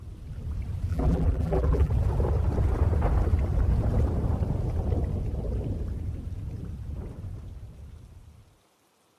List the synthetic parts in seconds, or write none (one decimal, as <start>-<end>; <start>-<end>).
0.9-1.9